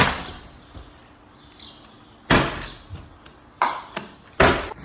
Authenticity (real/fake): real